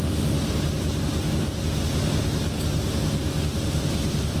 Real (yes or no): yes